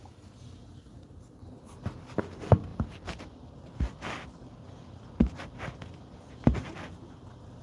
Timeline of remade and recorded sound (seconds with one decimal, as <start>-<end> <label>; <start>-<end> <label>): 0.0-7.6 recorded